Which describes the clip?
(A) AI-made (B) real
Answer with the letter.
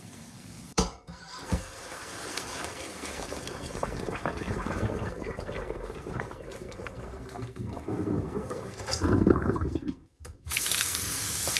A